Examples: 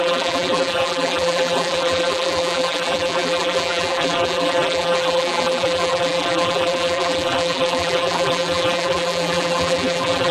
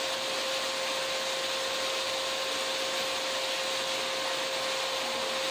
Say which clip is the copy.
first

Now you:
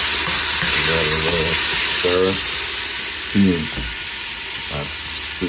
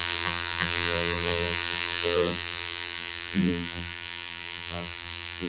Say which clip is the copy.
second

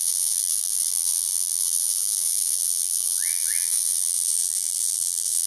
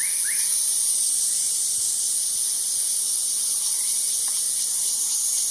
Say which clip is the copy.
first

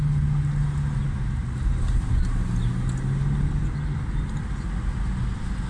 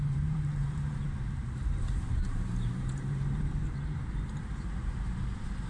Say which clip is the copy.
second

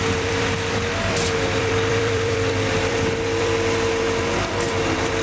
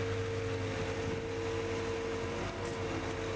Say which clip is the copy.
first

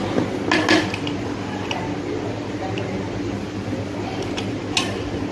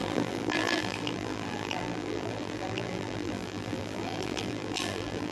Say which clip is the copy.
second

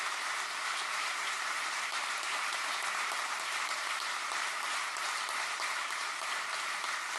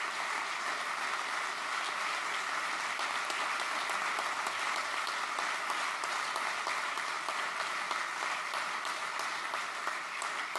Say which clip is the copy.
first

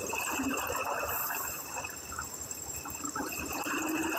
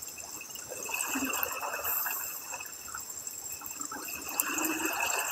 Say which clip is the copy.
first